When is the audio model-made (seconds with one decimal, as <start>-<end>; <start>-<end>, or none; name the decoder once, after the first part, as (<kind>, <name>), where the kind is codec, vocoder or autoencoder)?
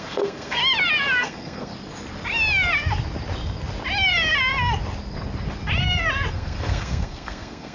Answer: 0.0-0.6 (codec, SNAC); 1.2-1.7; 6.3-7.7